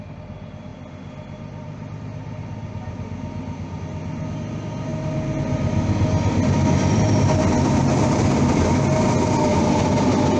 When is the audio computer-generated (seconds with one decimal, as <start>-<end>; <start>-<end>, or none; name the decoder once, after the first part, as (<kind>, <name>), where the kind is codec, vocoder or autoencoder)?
none